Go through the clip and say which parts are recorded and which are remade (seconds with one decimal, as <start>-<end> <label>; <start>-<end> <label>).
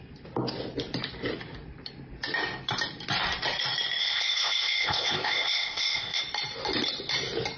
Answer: 0.0-4.0 recorded; 4.0-6.2 remade; 6.2-7.6 recorded